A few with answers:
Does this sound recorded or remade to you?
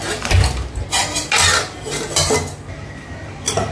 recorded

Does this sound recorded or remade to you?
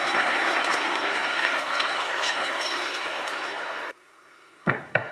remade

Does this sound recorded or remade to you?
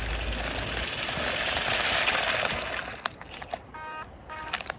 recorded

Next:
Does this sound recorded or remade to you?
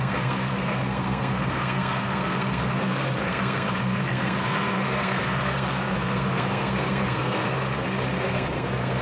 remade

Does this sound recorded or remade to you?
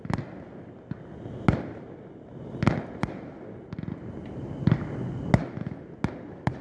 recorded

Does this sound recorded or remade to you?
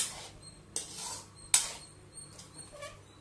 recorded